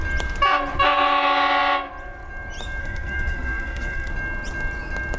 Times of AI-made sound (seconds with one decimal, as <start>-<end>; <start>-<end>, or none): 2.8-4.1